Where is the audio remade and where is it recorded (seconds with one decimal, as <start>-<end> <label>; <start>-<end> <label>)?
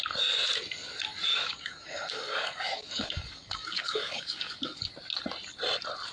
0.0-1.3 recorded; 1.3-4.8 remade; 4.8-6.1 recorded